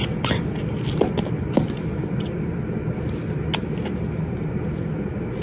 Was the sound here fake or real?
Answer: real